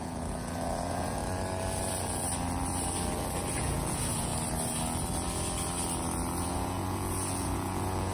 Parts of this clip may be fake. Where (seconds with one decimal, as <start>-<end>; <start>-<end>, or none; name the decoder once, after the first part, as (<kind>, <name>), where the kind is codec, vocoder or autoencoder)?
0.0-1.2 (vocoder, Vocos); 3.5-4.3; 6.4-8.1